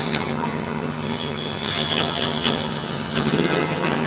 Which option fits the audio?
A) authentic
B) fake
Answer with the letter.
B